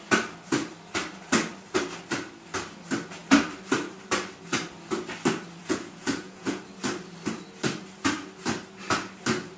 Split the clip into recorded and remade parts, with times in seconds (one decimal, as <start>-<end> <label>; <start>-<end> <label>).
0.0-5.6 recorded; 5.6-6.6 remade; 6.6-9.6 recorded